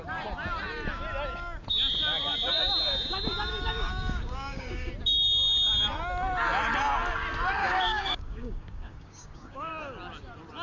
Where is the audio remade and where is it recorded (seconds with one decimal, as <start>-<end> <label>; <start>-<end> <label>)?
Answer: 0.0-3.5 recorded; 3.5-4.9 remade; 4.9-7.6 recorded; 7.6-9.7 remade; 9.7-10.6 recorded

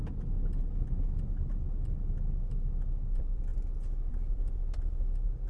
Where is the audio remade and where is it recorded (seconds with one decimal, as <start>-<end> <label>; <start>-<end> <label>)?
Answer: 0.0-2.8 recorded; 2.8-3.5 remade; 3.5-4.1 recorded; 4.1-4.6 remade; 4.6-5.5 recorded

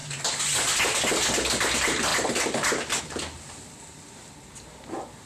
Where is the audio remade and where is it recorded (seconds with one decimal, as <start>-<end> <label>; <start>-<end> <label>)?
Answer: 0.0-5.3 recorded